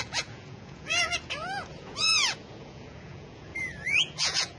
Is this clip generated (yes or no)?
yes